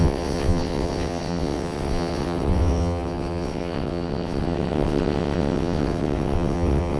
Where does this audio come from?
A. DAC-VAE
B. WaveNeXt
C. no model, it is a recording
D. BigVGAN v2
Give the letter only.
B